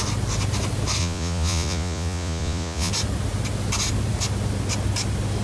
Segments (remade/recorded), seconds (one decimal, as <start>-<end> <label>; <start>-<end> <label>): 0.0-1.0 recorded; 1.0-2.9 remade; 2.9-5.4 recorded